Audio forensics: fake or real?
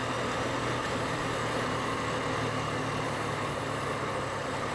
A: real